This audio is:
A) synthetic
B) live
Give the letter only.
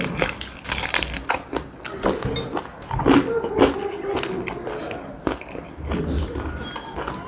B